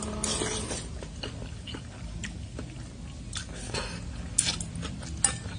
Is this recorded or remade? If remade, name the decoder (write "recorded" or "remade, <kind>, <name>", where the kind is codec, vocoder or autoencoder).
recorded